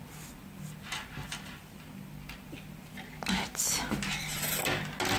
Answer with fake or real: real